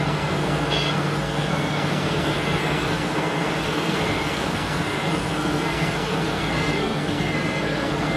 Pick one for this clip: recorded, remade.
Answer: remade